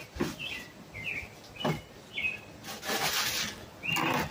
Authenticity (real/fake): real